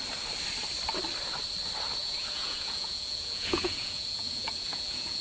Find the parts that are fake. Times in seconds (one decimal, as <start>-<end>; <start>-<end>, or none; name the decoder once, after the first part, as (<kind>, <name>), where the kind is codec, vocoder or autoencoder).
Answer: 2.0-5.2 (vocoder, Vocos)